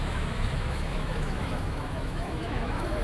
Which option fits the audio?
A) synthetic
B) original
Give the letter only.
A